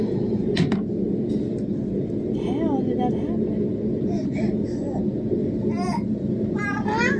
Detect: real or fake real